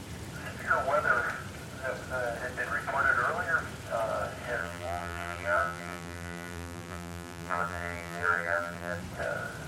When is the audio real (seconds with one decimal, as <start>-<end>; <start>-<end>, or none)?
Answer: 0.0-4.6; 9.0-9.7